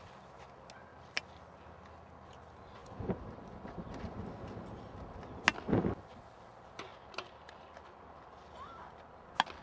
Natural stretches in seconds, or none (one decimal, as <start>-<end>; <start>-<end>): 0.0-9.6